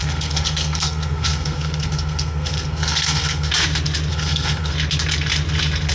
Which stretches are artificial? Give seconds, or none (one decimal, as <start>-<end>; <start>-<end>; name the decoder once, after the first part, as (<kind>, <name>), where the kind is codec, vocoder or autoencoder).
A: 0.0-3.5 (codec, SNAC); 4.1-4.7

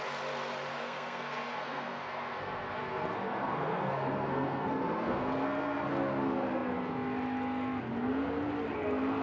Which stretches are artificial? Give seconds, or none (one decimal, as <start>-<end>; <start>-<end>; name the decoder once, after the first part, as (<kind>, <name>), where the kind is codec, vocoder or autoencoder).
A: 0.7-5.9 (codec, SNAC)

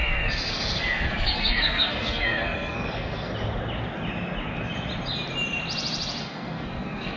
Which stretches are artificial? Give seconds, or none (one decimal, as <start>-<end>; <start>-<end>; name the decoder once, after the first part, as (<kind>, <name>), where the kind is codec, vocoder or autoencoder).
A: 0.0-3.3 (codec, SNAC); 6.2-7.2

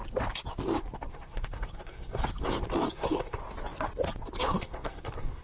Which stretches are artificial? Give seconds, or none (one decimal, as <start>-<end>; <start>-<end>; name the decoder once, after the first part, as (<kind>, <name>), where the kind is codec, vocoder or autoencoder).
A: 1.1-2.2 (codec, SNAC); 2.9-3.4; 4.4-5.4

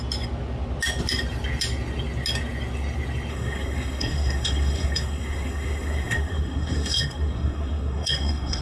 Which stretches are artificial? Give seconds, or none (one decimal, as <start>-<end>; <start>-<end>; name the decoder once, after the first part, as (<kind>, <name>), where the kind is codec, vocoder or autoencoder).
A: 3.3-8.6 (codec, SNAC)

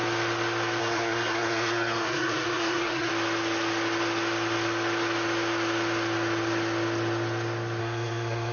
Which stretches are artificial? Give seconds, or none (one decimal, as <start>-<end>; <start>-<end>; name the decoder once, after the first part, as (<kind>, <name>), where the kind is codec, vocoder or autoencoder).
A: 0.8-3.1 (codec, SNAC); 7.8-8.5